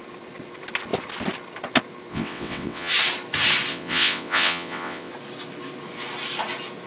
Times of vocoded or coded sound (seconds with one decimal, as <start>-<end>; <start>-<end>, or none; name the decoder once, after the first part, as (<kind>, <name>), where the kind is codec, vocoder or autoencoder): 2.1-2.9 (vocoder, WaveNeXt); 3.7-5.1